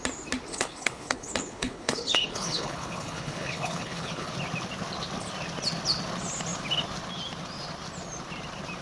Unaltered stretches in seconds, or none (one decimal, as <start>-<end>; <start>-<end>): 0.0-0.5; 4.3-8.8